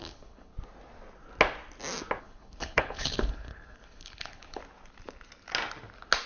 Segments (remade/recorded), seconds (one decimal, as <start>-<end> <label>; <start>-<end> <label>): 0.0-0.5 remade; 0.5-2.2 recorded; 2.2-4.6 remade; 4.6-6.3 recorded